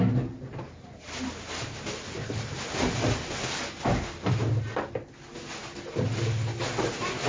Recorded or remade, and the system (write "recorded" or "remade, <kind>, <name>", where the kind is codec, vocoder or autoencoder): recorded